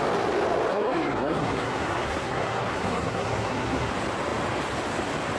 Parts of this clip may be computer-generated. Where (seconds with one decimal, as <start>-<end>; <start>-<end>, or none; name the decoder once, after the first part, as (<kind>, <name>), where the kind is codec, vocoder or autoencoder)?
0.7-3.9 (codec, SNAC)

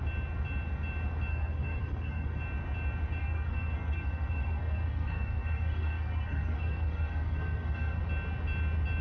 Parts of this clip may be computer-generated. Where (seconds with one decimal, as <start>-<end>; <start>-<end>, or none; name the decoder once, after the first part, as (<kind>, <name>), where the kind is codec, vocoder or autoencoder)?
1.3-2.4 (codec, SNAC); 3.2-8.0

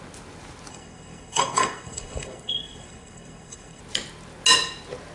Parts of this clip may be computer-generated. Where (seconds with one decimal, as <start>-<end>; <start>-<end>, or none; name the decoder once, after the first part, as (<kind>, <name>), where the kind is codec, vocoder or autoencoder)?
0.7-3.8 (codec, SNAC)

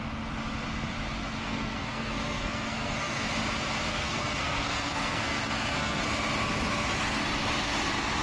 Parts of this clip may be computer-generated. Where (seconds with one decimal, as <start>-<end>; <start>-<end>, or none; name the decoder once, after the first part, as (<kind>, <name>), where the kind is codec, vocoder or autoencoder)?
1.4-3.3 (codec, SNAC); 3.9-6.0

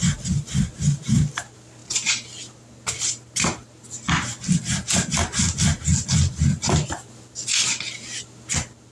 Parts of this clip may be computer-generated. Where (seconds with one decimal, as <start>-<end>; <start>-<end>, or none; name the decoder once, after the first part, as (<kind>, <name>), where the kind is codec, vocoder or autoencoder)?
none

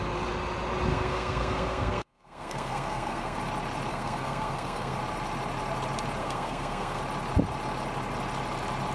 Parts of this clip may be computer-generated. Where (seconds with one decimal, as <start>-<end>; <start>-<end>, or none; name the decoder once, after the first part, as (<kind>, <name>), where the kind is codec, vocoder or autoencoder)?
0.9-3.4 (codec, SNAC); 3.9-5.0; 6.2-7.0